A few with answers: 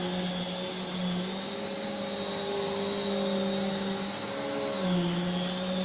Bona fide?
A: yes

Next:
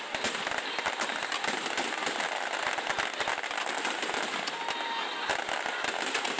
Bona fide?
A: yes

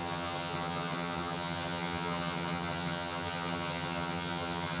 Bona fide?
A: no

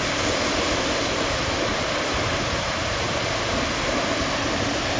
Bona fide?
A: yes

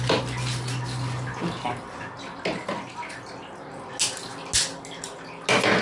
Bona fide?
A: yes